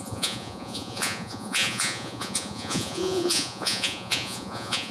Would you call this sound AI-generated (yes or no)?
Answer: yes